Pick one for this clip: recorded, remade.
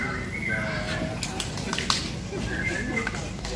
recorded